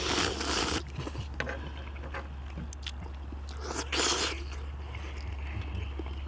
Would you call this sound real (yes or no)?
yes